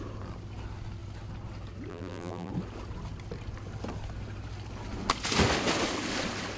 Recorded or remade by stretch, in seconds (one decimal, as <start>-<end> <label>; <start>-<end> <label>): 0.0-1.9 recorded; 1.9-2.5 remade; 2.5-6.6 recorded